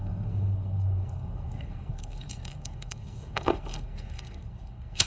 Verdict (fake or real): fake